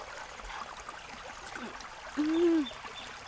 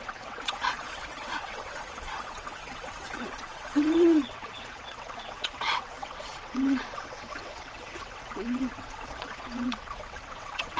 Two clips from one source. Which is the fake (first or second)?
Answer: second